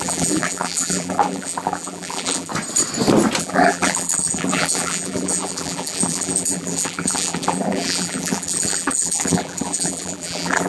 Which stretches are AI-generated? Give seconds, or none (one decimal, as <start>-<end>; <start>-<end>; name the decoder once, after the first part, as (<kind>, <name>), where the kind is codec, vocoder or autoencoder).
0.0-2.5 (vocoder, BigVGAN v2); 3.4-10.7